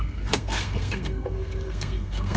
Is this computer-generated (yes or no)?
yes